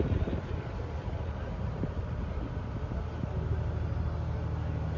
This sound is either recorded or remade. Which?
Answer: recorded